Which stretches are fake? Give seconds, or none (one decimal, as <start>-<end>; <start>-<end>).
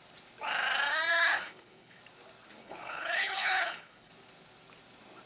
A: 1.1-2.0; 2.6-4.1